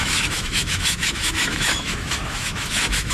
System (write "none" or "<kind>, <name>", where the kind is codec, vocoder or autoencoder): autoencoder, DAC-VAE